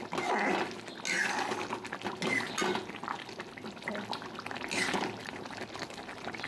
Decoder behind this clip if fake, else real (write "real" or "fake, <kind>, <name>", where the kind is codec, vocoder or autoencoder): real